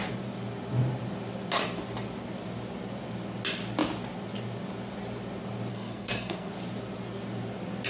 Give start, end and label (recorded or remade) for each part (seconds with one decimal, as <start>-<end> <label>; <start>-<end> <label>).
0.0-5.7 recorded; 5.7-6.5 remade; 6.5-7.9 recorded